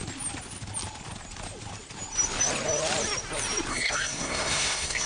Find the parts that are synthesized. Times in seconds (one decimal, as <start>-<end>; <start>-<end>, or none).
3.7-5.1

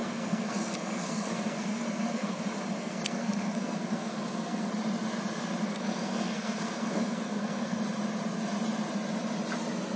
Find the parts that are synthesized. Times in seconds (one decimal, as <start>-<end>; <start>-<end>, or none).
0.0-2.4; 2.8-4.7; 5.7-7.8

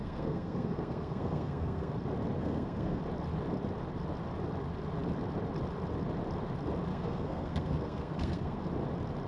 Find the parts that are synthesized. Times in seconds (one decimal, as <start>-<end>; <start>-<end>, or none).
0.0-1.9; 2.4-3.0; 6.9-8.6

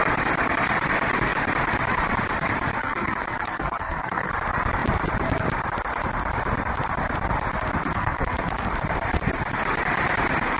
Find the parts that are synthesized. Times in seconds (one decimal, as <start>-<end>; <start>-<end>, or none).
2.8-4.3; 7.9-8.7

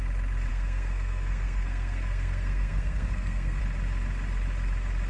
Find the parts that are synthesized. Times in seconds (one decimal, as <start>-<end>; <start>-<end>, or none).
0.5-3.6

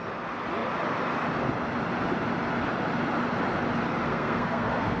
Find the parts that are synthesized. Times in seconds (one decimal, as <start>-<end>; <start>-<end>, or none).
4.0-5.0

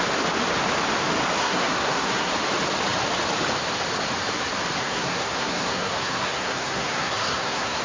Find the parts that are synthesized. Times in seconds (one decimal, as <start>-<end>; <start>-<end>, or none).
1.4-2.3; 4.8-7.8